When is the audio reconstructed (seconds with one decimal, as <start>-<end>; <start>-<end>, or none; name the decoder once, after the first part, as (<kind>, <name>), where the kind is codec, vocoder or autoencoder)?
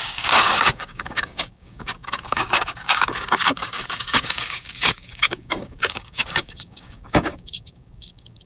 0.0-8.5 (codec, DAC)